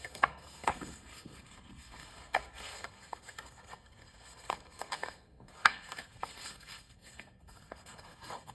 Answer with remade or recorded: remade